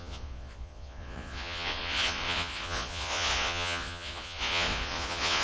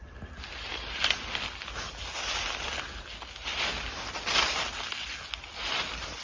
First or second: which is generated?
first